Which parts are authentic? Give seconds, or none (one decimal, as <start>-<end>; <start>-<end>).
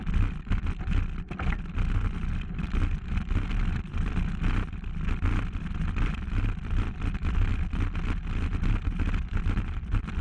7.5-9.6